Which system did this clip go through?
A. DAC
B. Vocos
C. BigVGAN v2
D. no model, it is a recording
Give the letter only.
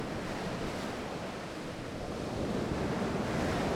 D